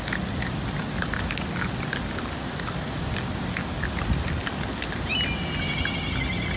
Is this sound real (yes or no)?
yes